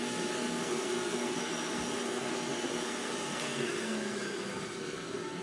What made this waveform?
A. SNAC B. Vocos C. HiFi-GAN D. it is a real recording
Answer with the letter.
A